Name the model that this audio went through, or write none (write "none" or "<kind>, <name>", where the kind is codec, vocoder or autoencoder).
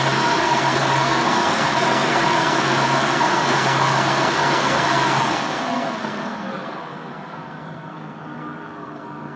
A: codec, SNAC